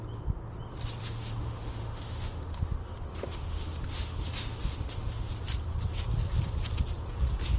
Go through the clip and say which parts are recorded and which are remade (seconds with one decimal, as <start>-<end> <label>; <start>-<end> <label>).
0.0-1.0 recorded; 1.0-5.3 remade; 5.3-7.6 recorded